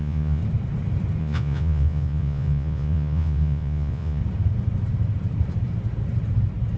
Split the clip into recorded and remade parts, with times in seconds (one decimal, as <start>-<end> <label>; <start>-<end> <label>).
0.0-0.4 remade; 0.4-1.2 recorded; 1.2-4.2 remade; 4.2-6.8 recorded